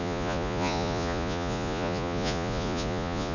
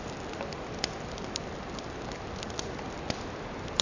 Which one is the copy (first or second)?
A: first